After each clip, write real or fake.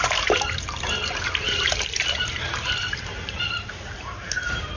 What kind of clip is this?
fake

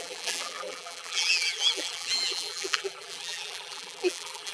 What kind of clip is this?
fake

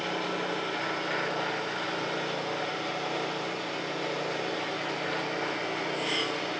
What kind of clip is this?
real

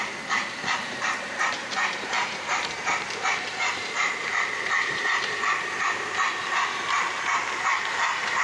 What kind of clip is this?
fake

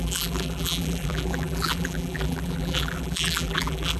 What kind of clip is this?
fake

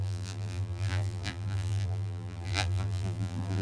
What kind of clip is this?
fake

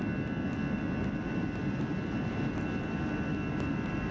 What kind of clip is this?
real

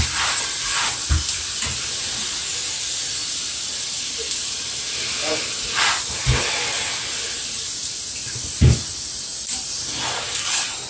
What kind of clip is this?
real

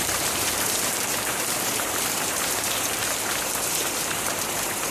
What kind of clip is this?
fake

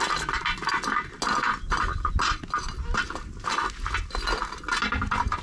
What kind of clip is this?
real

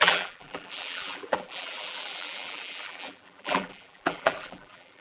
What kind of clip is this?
fake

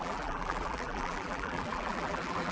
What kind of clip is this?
fake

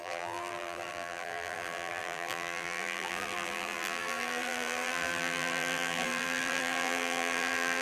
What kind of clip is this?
fake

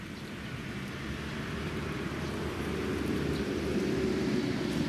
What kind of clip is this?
fake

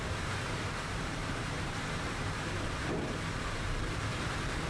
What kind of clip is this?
fake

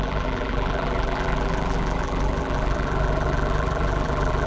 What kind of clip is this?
fake